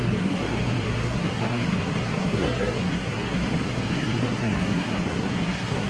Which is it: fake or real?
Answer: fake